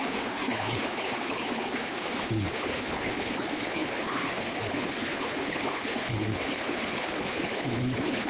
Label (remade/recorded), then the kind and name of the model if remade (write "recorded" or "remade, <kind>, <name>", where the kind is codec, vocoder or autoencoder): remade, codec, HILCodec